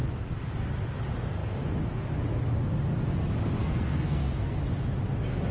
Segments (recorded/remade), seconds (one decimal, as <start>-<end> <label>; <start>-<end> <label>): 0.0-3.6 recorded; 3.6-4.6 remade; 4.6-5.5 recorded

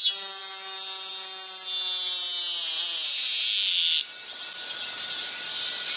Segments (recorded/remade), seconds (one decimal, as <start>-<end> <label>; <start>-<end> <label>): 0.0-6.0 recorded